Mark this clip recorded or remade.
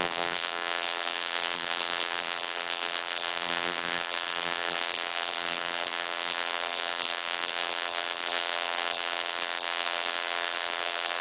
remade